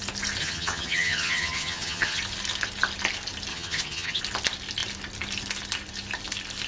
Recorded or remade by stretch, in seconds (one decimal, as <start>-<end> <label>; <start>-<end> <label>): 0.0-0.4 recorded; 0.4-2.2 remade; 2.2-3.5 recorded; 3.5-4.2 remade; 4.2-6.7 recorded

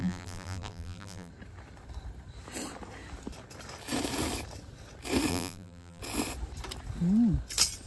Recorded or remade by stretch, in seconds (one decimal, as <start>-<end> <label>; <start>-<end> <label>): 0.0-1.3 remade; 1.3-5.3 recorded; 5.3-6.0 remade; 6.0-7.9 recorded

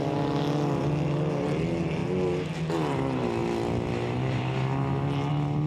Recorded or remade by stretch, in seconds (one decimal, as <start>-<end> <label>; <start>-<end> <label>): 0.0-5.7 recorded

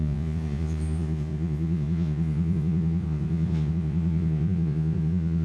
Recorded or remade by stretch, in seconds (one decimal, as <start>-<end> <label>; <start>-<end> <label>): 0.0-5.4 remade